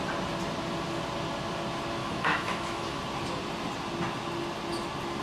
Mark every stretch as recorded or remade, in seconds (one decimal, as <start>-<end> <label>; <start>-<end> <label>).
0.0-2.0 recorded; 2.0-3.0 remade; 3.0-5.2 recorded